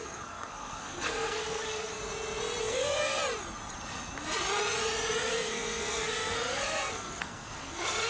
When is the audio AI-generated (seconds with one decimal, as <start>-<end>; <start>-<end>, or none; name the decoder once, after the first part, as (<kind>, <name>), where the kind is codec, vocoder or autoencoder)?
0.0-2.0 (codec, SNAC); 2.6-3.2; 5.3-8.1